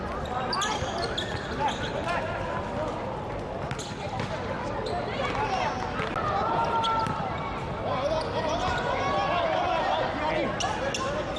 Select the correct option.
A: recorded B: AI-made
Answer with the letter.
A